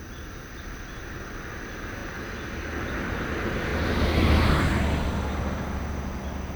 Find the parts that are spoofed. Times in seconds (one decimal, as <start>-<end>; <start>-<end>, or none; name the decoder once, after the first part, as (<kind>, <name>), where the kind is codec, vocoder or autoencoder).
none